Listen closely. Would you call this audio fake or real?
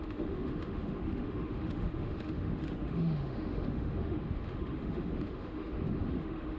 fake